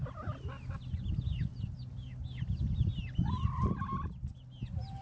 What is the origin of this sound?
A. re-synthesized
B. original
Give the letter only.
B